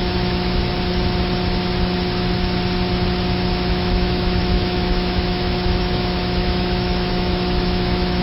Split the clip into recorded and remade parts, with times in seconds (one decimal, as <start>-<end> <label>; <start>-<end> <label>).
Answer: 0.0-0.6 remade; 0.6-3.7 recorded; 3.7-8.2 remade